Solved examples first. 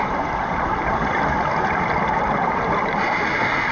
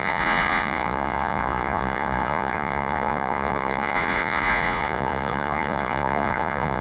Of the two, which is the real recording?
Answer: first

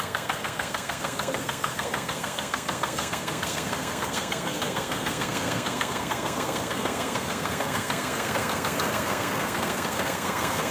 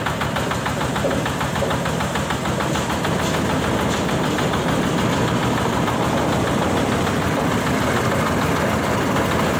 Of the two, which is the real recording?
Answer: second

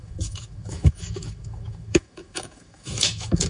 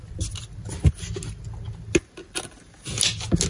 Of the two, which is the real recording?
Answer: second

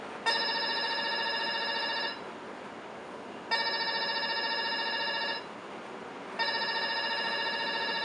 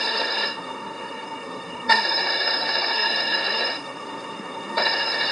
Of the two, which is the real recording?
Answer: first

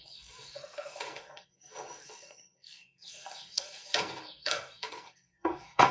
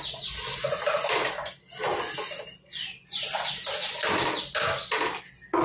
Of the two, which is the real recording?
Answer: second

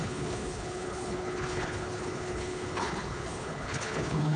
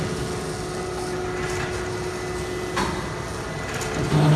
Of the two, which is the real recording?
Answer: second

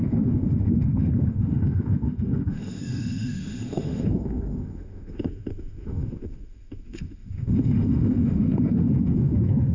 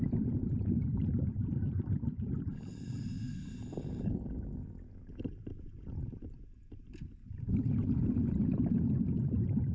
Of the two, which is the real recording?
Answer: second